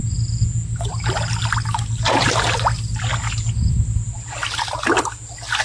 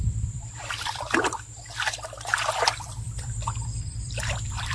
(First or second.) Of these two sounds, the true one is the first